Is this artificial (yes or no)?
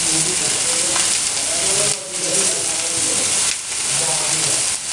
no